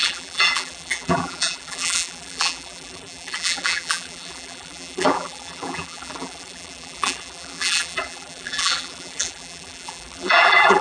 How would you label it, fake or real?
fake